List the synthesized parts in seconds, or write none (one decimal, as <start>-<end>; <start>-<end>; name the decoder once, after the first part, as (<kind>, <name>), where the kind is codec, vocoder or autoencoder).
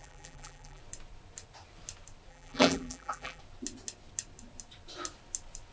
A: 0.0-0.8 (vocoder, BigVGAN v2); 2.3-3.4